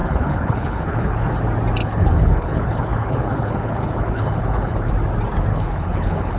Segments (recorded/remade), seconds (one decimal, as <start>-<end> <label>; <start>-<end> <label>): 0.0-1.4 remade; 1.4-1.8 recorded; 1.8-4.9 remade; 4.9-5.5 recorded; 5.5-6.4 remade